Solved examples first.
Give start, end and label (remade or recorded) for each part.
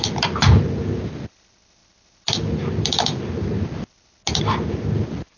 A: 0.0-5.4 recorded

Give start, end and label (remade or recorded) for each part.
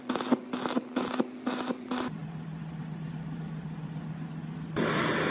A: 0.0-5.3 recorded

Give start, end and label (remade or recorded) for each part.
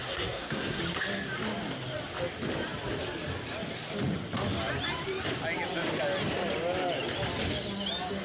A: 0.0-0.8 remade; 0.8-8.2 recorded